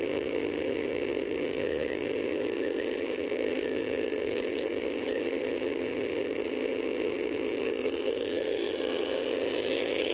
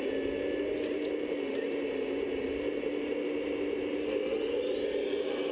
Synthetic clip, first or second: first